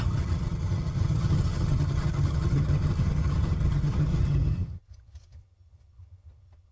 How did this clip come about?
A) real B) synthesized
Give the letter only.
B